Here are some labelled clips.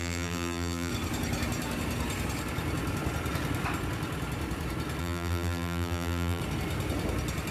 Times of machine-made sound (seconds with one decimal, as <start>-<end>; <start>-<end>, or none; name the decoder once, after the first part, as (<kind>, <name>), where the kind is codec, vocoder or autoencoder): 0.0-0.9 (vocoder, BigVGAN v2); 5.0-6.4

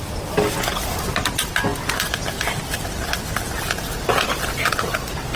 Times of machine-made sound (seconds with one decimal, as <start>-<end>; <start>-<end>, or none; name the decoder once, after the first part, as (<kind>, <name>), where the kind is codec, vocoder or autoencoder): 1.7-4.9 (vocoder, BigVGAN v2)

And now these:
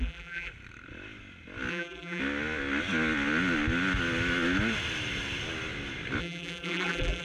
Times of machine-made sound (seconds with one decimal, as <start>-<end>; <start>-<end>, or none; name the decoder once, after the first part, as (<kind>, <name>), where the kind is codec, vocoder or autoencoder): 0.0-0.5 (vocoder, BigVGAN v2); 1.7-2.2; 6.2-7.2

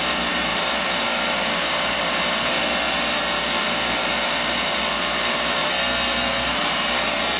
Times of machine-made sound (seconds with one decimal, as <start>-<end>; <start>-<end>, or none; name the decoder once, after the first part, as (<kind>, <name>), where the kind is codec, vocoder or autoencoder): 0.0-5.6 (vocoder, BigVGAN v2); 6.1-7.4

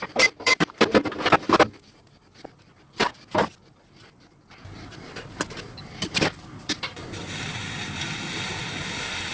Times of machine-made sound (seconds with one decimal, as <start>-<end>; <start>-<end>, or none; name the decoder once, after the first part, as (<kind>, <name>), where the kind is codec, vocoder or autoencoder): 0.0-3.0 (vocoder, BigVGAN v2); 5.8-9.3